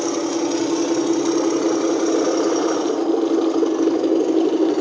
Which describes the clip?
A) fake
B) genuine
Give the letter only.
B